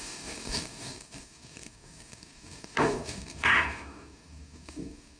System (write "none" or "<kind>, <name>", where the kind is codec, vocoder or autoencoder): codec, DAC